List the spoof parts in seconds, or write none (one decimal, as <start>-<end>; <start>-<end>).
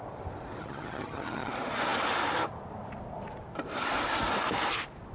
0.6-1.5